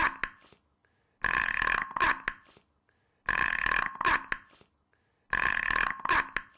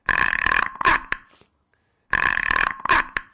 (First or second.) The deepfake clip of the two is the second